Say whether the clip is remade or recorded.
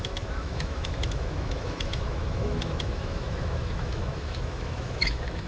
remade